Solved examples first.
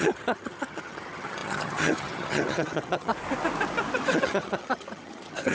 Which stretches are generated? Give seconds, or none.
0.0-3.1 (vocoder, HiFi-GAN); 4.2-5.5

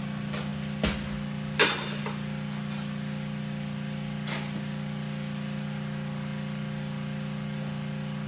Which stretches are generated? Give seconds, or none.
none

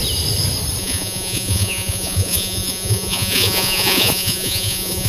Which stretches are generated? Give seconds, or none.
0.8-5.1 (vocoder, Vocos)

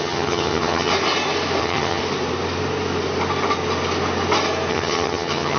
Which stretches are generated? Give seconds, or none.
0.0-0.9 (vocoder, HiFi-GAN); 1.6-2.0; 4.7-5.6

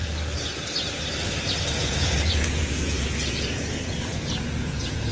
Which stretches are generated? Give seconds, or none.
1.8-5.1 (vocoder, Vocos)

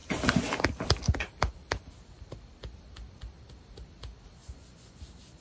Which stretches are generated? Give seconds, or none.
4.4-5.0 (vocoder, Vocos)